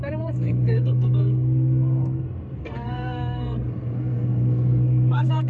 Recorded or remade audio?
remade